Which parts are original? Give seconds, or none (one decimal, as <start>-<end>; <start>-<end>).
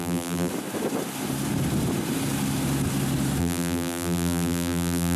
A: 0.5-3.4